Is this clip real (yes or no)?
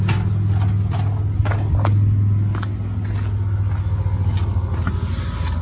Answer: yes